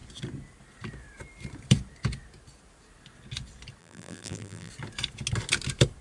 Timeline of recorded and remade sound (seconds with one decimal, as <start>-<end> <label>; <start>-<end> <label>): 0.0-3.8 recorded; 3.8-4.7 remade; 4.7-6.0 recorded